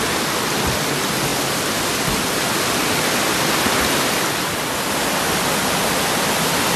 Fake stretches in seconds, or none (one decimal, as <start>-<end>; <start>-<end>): none